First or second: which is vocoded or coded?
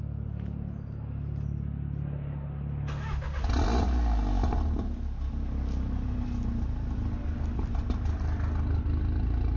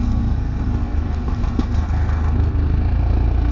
second